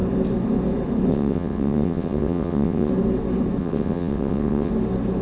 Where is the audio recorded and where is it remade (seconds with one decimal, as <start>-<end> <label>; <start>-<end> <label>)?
0.0-1.1 recorded; 1.1-2.9 remade; 2.9-3.6 recorded; 3.6-4.7 remade; 4.7-5.2 recorded